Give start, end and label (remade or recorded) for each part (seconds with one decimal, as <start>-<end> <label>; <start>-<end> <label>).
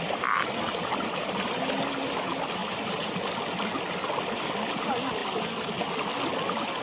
0.0-6.8 recorded